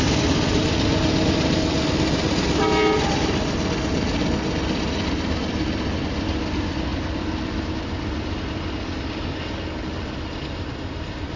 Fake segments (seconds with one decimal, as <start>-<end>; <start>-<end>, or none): none